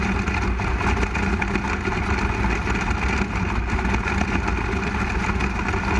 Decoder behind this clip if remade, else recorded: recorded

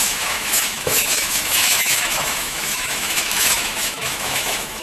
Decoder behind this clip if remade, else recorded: remade, autoencoder, DAC-VAE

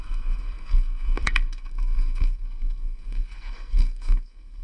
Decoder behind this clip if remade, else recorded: remade, codec, SNAC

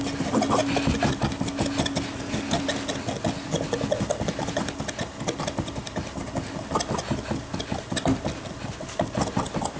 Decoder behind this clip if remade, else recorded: recorded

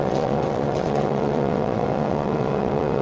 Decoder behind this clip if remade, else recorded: remade, vocoder, WaveNeXt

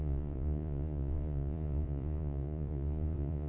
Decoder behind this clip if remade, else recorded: remade, vocoder, Vocos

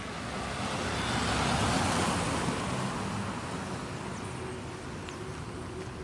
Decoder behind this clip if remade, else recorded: recorded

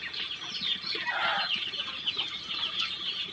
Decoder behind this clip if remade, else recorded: recorded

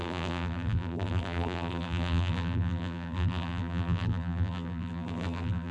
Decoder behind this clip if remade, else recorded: remade, vocoder, BigVGAN v2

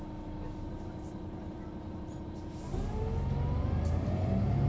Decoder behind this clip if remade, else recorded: recorded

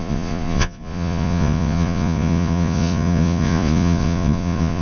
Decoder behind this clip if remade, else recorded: remade, vocoder, Vocos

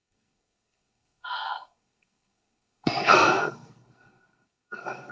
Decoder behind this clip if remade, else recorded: remade, codec, SNAC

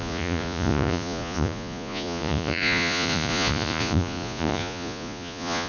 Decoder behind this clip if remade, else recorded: remade, vocoder, Vocos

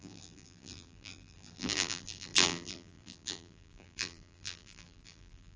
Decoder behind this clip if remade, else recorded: remade, vocoder, BigVGAN v2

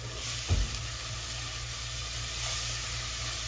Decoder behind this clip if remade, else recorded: recorded